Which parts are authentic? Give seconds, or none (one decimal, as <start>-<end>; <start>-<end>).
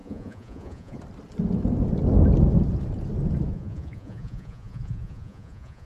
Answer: 1.0-3.5